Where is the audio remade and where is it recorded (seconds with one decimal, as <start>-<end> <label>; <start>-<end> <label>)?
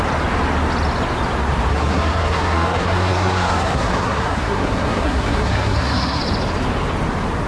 0.0-1.7 recorded; 1.7-6.2 remade; 6.2-7.5 recorded